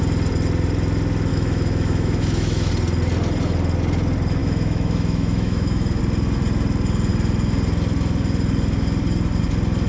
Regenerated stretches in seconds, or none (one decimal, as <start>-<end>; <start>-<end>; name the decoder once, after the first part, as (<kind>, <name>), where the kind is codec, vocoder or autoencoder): 1.3-2.7 (autoencoder, DAC-VAE); 4.4-6.0